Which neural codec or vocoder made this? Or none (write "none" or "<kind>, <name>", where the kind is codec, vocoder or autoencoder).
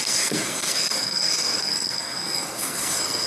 codec, SNAC